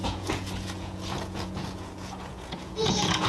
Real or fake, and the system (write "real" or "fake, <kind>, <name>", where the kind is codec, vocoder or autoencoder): fake, vocoder, Vocos